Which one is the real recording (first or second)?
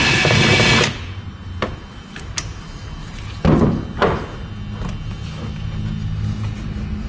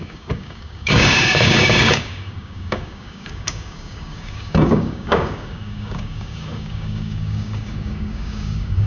first